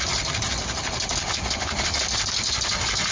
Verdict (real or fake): real